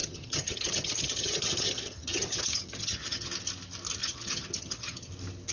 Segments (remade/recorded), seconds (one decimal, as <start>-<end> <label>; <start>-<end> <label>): 0.0-3.3 remade; 3.3-4.0 recorded; 4.0-5.1 remade; 5.1-5.5 recorded